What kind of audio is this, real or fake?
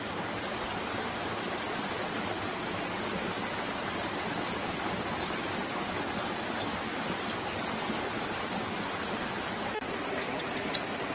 real